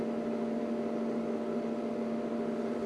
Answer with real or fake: real